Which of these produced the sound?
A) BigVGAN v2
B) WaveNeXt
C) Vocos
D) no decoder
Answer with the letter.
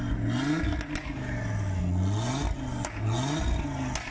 D